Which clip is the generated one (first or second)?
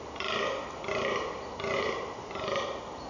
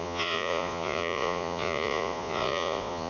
second